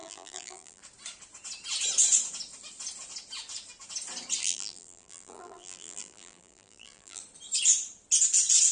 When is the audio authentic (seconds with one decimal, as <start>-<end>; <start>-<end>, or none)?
0.8-4.4; 7.2-8.7